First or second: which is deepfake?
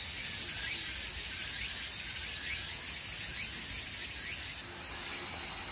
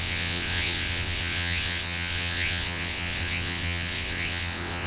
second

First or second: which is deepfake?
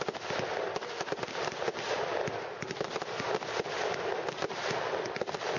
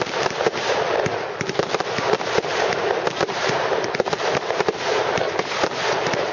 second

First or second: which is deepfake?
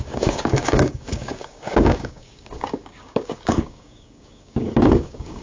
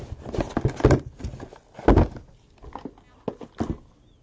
first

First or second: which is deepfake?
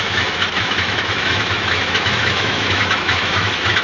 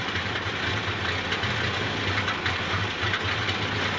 first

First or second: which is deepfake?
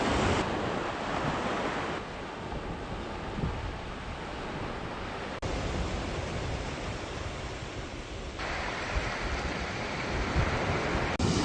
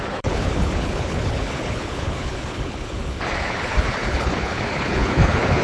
second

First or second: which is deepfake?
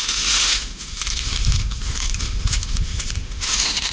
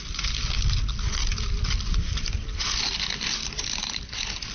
first